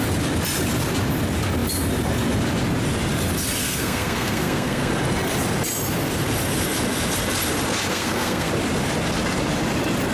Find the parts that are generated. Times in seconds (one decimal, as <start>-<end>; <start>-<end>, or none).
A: 3.6-4.9; 7.9-8.5